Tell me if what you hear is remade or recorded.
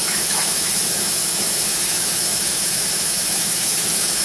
remade